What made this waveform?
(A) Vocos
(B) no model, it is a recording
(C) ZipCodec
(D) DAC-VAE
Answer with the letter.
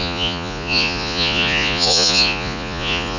A